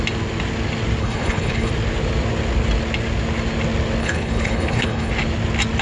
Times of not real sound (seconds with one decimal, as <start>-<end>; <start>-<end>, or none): 1.0-1.7; 4.0-5.1